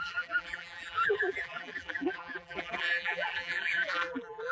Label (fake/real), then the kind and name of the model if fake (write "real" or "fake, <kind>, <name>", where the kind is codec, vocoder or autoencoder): fake, vocoder, BigVGAN v2